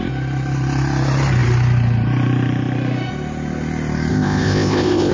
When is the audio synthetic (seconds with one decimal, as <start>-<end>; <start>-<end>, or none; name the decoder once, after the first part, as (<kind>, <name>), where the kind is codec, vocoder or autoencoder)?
4.1-5.1 (codec, ZipCodec)